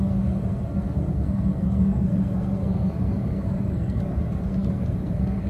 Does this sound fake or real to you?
fake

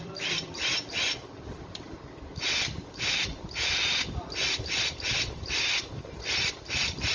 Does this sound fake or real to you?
fake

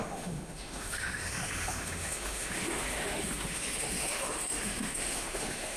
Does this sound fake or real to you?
fake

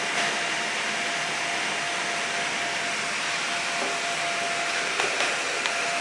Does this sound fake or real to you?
real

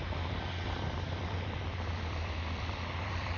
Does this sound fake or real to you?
fake